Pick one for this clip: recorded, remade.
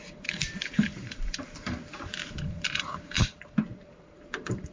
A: remade